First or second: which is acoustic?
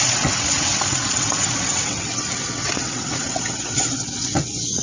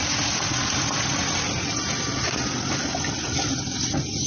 second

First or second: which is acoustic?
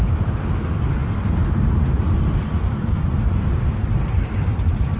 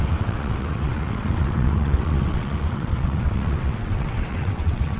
first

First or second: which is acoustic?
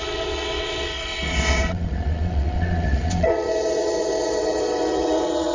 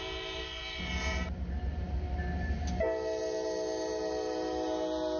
second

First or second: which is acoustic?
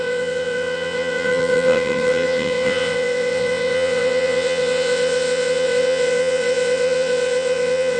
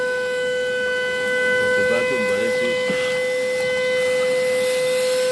second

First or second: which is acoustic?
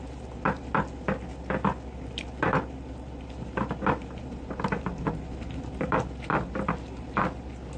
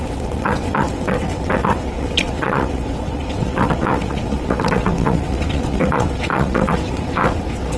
first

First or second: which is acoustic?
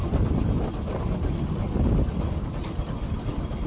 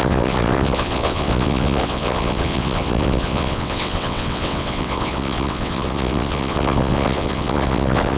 first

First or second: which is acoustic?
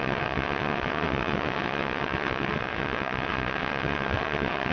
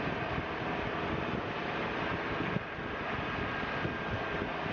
second